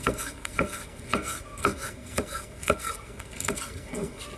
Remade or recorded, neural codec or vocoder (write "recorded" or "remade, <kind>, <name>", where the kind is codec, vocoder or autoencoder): remade, codec, SNAC